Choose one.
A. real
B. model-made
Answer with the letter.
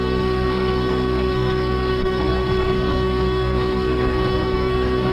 B